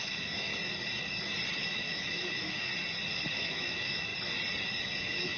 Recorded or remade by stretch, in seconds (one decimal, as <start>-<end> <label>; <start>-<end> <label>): 0.0-0.5 remade; 0.5-1.6 recorded; 1.6-2.7 remade; 2.7-3.3 recorded; 3.3-4.1 remade; 4.1-5.0 recorded; 5.0-5.4 remade